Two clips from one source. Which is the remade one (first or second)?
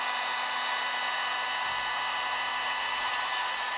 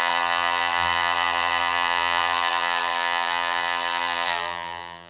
second